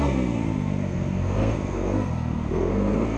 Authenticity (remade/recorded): remade